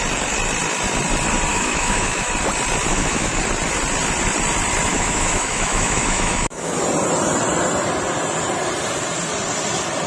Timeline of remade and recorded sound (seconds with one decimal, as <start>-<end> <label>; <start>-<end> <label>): 0.0-1.5 recorded; 1.5-2.3 remade; 2.3-2.9 recorded; 2.9-3.4 remade; 3.4-4.9 recorded; 4.9-6.7 remade; 6.7-10.1 recorded